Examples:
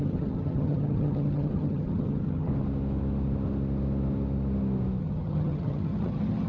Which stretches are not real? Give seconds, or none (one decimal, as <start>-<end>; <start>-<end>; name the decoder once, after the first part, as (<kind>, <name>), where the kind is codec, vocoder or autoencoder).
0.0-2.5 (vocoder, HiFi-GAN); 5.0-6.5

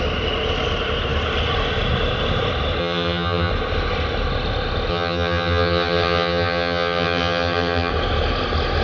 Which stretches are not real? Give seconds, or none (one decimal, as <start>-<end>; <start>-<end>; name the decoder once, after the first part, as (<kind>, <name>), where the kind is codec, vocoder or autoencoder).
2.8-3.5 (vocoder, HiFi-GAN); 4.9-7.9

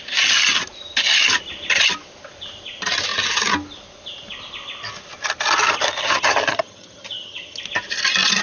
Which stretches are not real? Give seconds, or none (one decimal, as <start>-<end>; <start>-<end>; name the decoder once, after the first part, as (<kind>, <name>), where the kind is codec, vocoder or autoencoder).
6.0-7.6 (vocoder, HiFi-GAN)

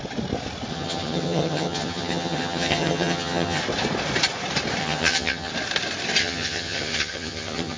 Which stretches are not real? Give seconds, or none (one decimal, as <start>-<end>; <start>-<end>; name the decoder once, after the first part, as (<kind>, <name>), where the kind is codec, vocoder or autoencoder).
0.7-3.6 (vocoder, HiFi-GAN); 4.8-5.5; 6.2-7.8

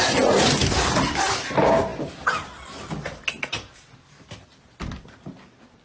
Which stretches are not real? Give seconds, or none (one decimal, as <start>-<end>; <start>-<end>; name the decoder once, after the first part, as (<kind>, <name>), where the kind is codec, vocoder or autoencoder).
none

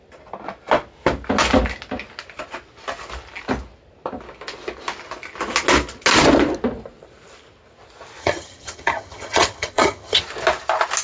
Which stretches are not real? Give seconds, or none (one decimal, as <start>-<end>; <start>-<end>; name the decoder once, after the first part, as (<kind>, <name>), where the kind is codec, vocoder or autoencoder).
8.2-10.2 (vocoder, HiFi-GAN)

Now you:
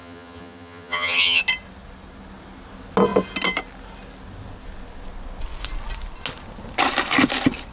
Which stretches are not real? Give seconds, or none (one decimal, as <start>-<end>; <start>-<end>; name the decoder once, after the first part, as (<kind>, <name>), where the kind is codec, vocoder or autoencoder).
0.0-1.4 (vocoder, HiFi-GAN)

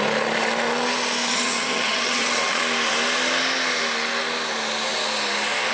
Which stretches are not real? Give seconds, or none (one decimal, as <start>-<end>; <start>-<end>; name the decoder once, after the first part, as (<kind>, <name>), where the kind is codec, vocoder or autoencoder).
1.3-2.6 (vocoder, HiFi-GAN)